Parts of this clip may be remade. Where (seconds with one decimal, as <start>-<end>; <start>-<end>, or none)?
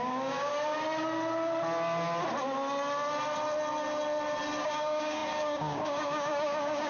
0.0-0.5; 4.6-6.9